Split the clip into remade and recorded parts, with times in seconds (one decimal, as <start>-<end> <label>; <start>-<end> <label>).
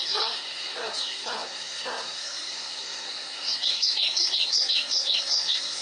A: 0.0-5.8 remade